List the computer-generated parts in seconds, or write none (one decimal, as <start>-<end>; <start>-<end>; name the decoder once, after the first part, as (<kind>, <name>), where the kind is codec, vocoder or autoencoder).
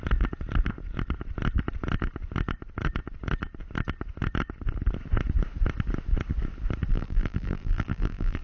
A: 6.9-8.4 (vocoder, BigVGAN v2)